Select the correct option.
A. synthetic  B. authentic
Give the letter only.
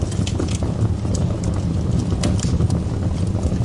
B